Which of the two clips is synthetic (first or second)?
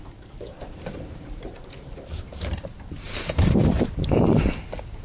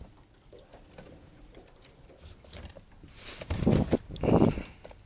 first